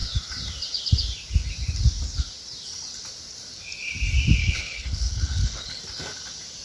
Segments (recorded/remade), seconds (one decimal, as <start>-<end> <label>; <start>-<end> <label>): 0.0-4.4 recorded; 4.4-5.8 remade; 5.8-6.6 recorded